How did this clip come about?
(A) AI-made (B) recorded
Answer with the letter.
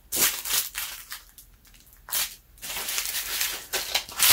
B